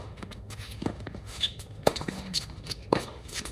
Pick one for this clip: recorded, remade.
remade